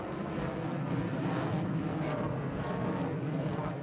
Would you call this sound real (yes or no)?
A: no